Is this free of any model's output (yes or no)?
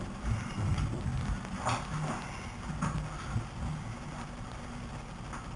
yes